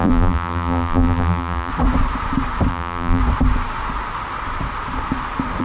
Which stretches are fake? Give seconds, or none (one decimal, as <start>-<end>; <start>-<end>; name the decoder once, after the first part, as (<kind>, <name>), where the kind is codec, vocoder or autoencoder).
0.0-1.7 (vocoder, BigVGAN v2); 2.7-3.2